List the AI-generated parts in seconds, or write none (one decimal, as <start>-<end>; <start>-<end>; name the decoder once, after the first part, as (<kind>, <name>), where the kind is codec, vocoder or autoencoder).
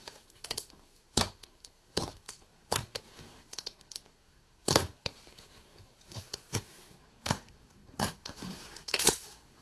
0.0-9.6 (codec, SNAC)